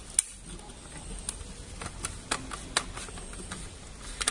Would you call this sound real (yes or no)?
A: yes